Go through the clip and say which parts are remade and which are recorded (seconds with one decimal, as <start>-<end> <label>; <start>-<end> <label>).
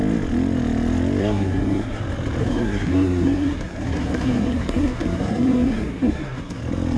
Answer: 0.0-1.2 recorded; 1.2-2.0 remade; 2.0-2.4 recorded; 2.4-6.6 remade; 6.6-7.0 recorded